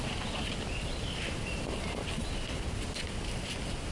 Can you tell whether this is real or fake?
real